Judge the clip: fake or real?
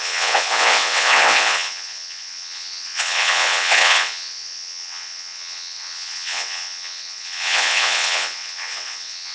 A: fake